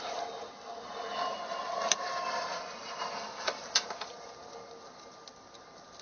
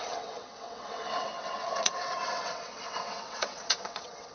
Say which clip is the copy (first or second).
second